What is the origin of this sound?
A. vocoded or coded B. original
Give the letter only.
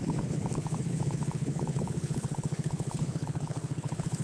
A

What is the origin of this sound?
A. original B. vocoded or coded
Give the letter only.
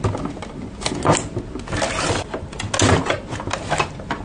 A